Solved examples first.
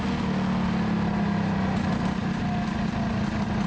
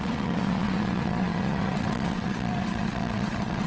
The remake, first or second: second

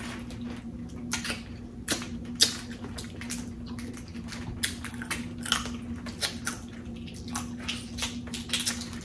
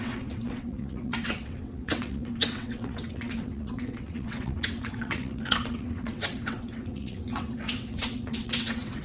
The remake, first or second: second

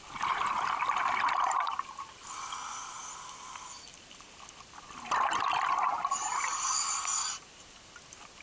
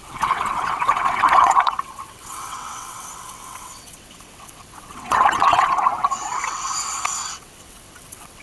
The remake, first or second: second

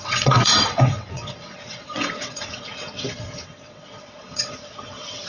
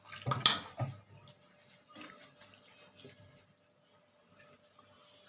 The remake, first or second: first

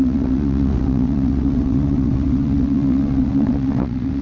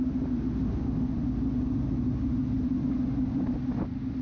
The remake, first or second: first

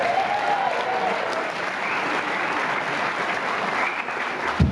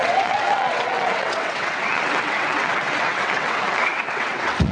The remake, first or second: second